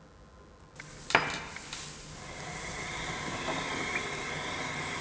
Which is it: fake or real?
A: real